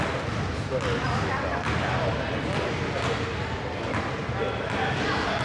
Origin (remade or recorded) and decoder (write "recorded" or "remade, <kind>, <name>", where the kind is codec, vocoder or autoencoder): recorded